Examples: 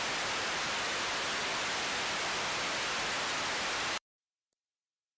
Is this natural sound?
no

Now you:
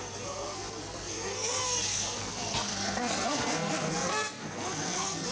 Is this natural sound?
no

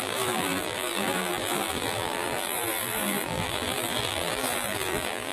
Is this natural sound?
no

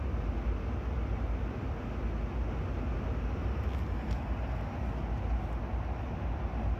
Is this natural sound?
yes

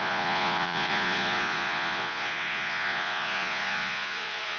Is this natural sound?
no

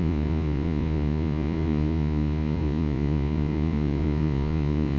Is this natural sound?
no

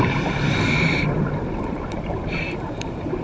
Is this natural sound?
no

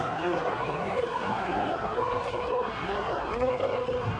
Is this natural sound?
no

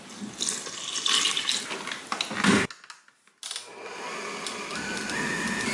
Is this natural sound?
yes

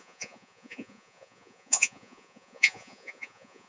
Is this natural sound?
no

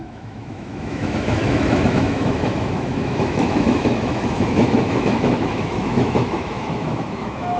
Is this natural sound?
no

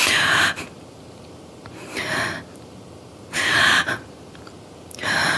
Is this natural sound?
no